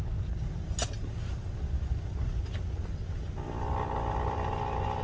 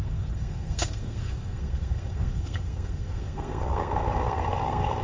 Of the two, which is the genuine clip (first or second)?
first